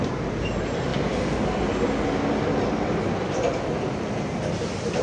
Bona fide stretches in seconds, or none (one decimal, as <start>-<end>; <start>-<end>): 0.0-5.0